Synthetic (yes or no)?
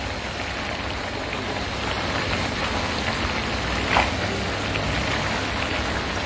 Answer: no